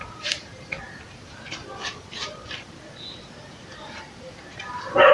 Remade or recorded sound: remade